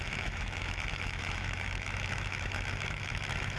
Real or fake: fake